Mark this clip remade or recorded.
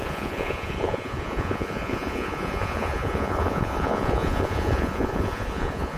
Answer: remade